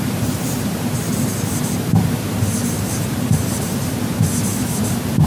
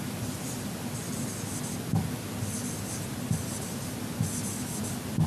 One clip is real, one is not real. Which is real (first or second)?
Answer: second